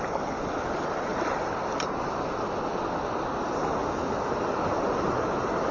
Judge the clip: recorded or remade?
recorded